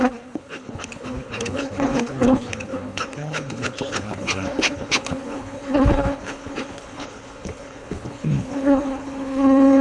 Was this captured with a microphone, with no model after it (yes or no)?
no